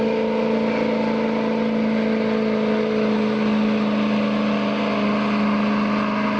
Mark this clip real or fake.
real